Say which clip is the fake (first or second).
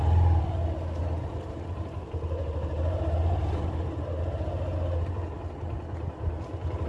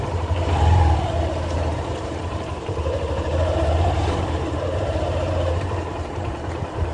second